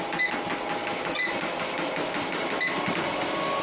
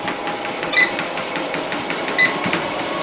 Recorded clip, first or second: first